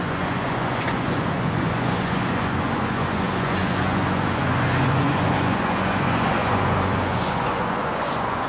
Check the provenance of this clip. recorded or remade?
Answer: remade